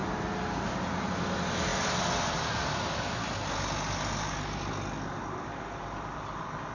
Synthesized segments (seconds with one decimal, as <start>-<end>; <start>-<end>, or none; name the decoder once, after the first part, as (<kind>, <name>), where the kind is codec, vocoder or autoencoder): none